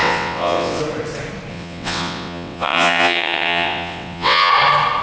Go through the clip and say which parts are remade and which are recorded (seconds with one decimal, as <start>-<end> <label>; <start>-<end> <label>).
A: 0.0-0.8 remade; 0.8-1.5 recorded; 1.5-4.5 remade; 4.5-5.0 recorded